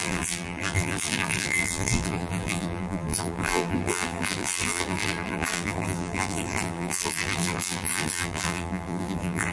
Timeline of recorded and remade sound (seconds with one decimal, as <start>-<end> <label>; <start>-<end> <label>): 0.0-9.5 remade